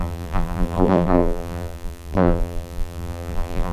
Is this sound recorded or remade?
remade